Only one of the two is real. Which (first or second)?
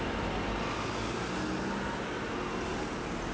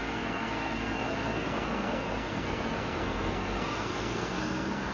first